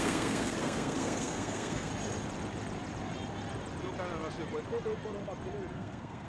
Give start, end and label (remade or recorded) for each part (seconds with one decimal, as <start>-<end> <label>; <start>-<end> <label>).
0.0-1.9 remade; 1.9-5.7 recorded; 5.7-6.3 remade